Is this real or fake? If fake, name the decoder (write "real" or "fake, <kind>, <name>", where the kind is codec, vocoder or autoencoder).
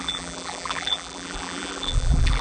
fake, vocoder, BigVGAN v2